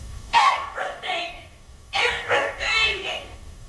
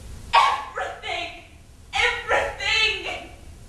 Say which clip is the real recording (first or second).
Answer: second